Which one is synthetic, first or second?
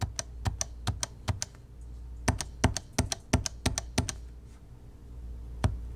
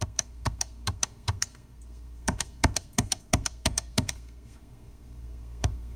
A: second